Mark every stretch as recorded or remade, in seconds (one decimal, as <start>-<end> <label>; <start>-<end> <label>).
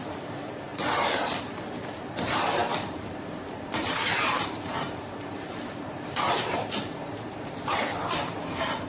0.0-8.9 remade